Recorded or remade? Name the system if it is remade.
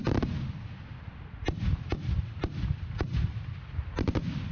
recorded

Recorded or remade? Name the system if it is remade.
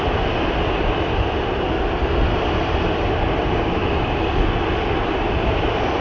recorded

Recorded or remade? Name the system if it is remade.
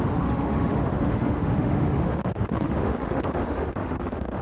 remade, autoencoder, DAC-VAE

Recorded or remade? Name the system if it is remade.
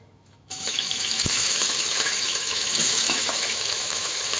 remade, autoencoder, DAC-VAE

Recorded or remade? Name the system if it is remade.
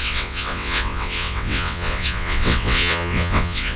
remade, vocoder, WaveNeXt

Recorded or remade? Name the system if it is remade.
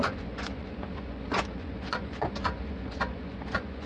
remade, vocoder, Vocos